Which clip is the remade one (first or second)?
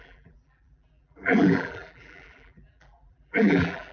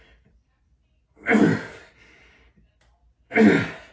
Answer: first